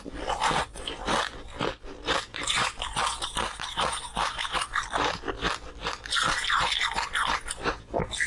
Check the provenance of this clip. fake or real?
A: real